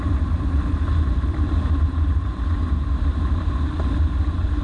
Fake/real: fake